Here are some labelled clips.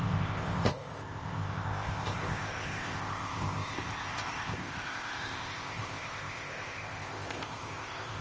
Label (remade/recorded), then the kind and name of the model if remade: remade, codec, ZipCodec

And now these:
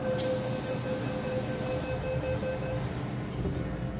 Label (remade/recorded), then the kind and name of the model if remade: recorded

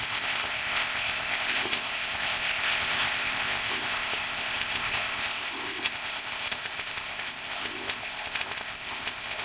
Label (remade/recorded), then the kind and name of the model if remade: remade, codec, ZipCodec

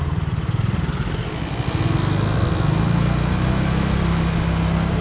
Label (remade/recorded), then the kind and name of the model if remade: recorded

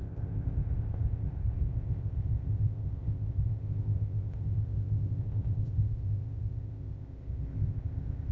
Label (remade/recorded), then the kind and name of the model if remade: remade, codec, ZipCodec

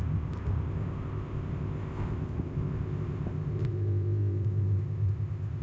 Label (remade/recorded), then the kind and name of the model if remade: remade, codec, ZipCodec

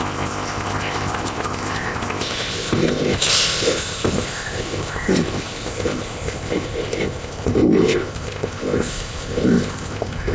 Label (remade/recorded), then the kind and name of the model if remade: remade, codec, ZipCodec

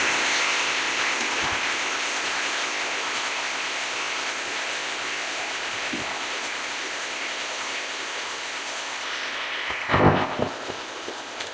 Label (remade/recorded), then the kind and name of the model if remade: remade, codec, ZipCodec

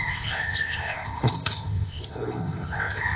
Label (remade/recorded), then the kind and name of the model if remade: remade, codec, ZipCodec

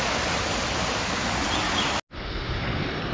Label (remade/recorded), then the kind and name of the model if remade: recorded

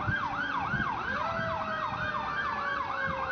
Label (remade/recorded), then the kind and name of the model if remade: recorded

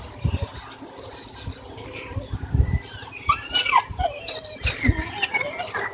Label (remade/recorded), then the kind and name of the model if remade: recorded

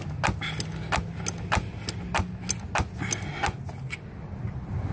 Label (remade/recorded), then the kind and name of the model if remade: recorded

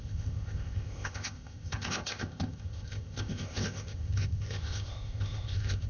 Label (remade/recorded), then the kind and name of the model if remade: remade, codec, ZipCodec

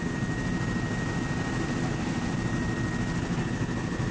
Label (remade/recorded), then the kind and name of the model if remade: recorded